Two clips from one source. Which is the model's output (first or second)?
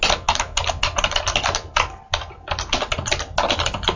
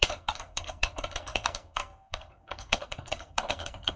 second